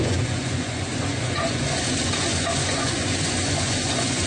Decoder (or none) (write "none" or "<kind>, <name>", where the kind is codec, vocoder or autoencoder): vocoder, Vocos